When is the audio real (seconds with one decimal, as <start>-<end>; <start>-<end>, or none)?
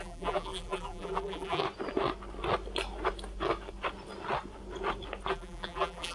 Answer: 1.6-5.3